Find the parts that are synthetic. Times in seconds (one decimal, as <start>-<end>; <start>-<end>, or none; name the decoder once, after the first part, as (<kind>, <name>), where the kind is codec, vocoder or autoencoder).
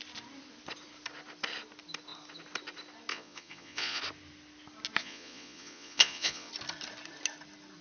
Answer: 3.1-4.0 (vocoder, Vocos); 5.0-6.5